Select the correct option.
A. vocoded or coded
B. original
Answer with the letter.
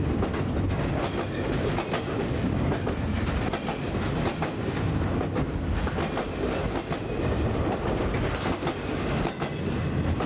B